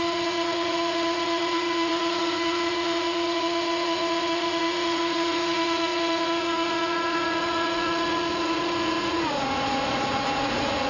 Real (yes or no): no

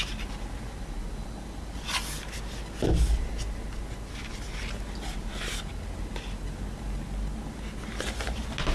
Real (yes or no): yes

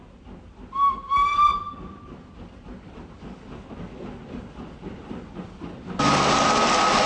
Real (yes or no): yes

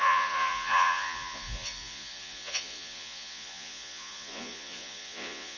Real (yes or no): no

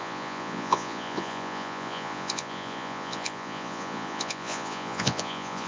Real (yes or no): no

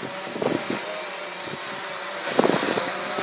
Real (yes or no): yes